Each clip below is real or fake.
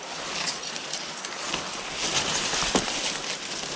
real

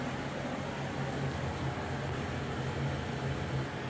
real